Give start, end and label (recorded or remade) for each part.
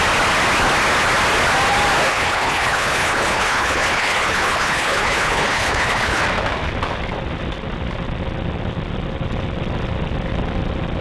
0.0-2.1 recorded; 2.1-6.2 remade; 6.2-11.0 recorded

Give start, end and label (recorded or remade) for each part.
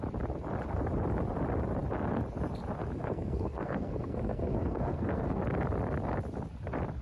0.0-3.0 recorded; 3.0-5.4 remade; 5.4-7.0 recorded